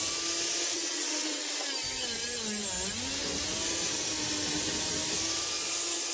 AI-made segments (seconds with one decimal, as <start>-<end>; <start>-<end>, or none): 0.7-1.5